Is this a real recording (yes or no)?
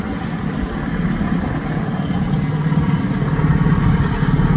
yes